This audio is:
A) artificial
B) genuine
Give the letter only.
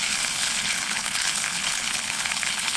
A